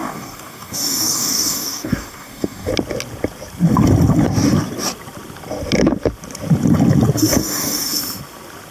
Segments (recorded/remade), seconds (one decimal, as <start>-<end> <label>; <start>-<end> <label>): 0.0-2.7 remade; 2.7-7.4 recorded; 7.4-8.0 remade; 8.0-8.7 recorded